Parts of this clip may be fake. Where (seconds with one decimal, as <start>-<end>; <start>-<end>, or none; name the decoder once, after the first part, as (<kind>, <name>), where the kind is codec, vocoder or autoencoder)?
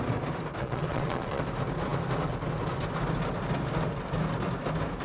0.6-1.4 (vocoder, Vocos)